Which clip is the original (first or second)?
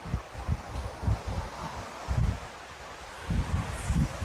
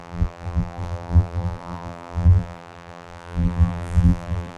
first